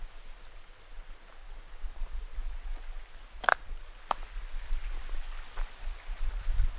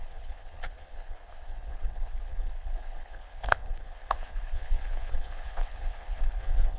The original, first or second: first